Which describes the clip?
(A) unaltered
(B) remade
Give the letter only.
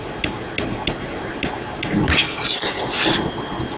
A